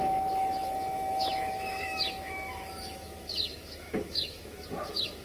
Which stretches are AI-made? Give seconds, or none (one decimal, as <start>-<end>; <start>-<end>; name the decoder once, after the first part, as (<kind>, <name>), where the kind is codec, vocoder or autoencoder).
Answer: 0.0-5.2 (autoencoder, DAC-VAE)